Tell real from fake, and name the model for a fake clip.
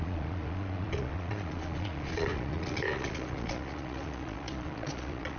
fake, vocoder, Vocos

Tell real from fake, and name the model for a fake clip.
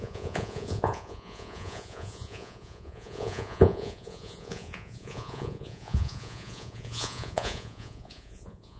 fake, vocoder, Vocos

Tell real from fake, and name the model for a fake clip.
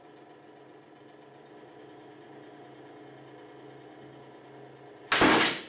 real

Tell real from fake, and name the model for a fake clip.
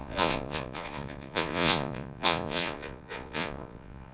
fake, vocoder, Vocos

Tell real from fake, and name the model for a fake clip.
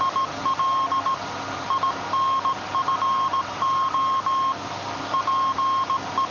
real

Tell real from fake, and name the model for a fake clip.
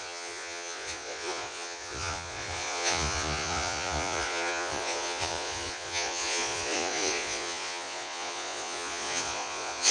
fake, vocoder, Vocos